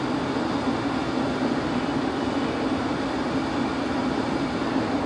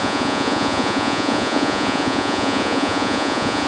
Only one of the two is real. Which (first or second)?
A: first